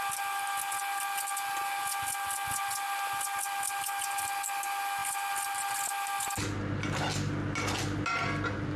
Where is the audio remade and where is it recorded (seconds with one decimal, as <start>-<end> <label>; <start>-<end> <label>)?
0.0-8.8 recorded